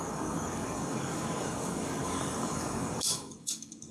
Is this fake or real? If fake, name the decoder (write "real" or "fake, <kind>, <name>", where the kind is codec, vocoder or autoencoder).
fake, codec, DAC